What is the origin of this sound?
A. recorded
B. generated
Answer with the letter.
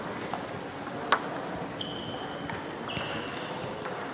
A